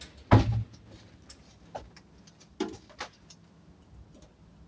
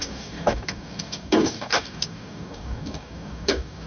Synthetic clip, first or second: second